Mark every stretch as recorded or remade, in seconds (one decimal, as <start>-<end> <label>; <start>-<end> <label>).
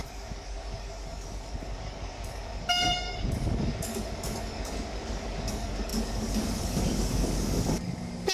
0.0-8.3 remade